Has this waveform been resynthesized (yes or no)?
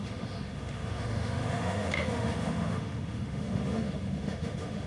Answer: yes